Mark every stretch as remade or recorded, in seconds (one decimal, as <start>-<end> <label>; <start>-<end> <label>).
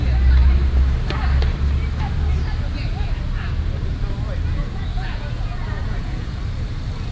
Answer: 0.0-4.6 recorded; 4.6-6.4 remade; 6.4-7.1 recorded